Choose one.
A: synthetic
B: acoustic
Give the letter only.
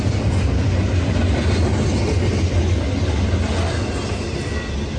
B